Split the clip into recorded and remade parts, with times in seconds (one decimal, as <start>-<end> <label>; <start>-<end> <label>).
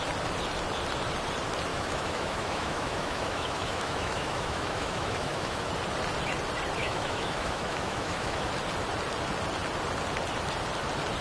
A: 0.0-1.7 recorded; 1.7-5.7 remade; 5.7-6.8 recorded; 6.8-8.5 remade; 8.5-11.2 recorded